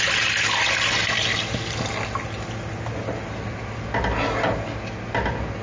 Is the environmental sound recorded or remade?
recorded